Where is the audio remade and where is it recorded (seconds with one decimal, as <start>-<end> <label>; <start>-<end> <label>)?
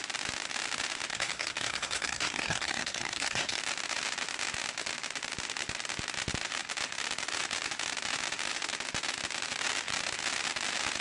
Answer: 0.0-1.1 recorded; 1.1-3.6 remade; 3.6-11.0 recorded